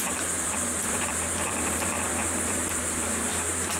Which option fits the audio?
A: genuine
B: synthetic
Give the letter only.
B